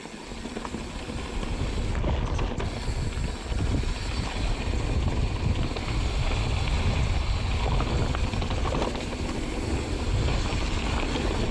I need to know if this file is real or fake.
real